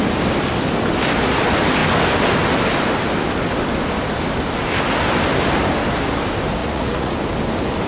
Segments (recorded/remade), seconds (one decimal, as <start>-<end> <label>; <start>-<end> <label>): 0.0-6.6 recorded; 6.6-7.1 remade; 7.1-7.9 recorded